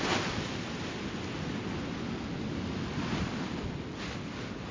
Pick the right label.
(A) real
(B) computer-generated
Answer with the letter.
A